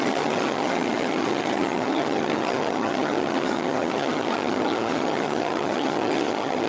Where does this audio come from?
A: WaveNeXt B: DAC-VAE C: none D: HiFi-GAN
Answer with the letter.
D